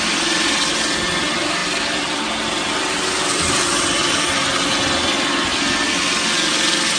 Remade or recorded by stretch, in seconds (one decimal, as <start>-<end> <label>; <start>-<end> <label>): 0.0-7.0 recorded